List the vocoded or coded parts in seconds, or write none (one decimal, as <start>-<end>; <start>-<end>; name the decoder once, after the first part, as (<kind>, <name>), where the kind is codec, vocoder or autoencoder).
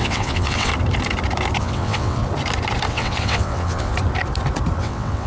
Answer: 0.0-0.7 (vocoder, WaveNeXt); 1.6-2.2; 2.9-3.9; 4.8-5.3